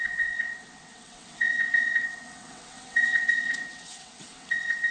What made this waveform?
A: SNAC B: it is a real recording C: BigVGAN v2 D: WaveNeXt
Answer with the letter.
D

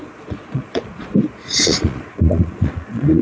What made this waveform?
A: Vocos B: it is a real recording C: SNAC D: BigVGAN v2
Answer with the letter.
A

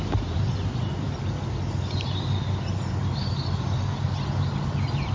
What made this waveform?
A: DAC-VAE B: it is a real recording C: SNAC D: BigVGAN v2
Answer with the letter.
B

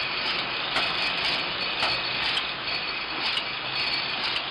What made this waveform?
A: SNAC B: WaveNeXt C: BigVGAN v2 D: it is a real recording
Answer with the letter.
D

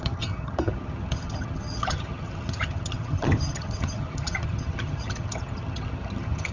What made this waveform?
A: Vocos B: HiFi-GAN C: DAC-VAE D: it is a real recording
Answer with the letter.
B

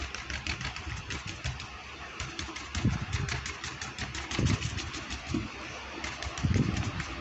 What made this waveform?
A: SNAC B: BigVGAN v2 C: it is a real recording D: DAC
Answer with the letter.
B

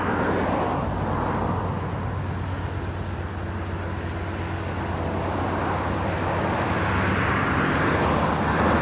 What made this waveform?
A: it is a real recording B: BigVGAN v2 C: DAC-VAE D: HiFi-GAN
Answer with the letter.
A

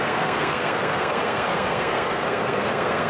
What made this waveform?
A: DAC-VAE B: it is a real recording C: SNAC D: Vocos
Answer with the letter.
C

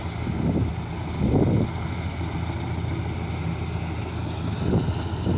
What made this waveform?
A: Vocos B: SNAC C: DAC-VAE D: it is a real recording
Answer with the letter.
D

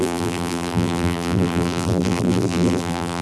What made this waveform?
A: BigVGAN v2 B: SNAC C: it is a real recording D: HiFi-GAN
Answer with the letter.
A